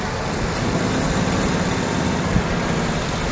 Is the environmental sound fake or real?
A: real